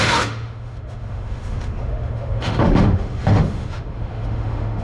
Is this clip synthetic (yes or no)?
yes